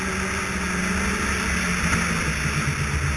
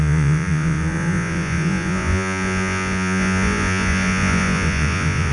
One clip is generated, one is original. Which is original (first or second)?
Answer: first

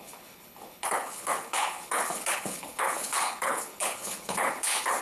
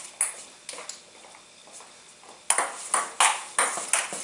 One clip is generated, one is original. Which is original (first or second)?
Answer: second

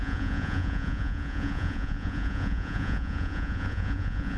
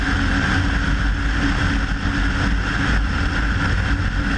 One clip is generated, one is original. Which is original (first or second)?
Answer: second